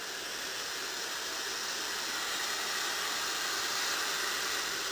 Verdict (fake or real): real